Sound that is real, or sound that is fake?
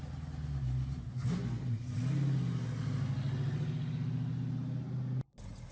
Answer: real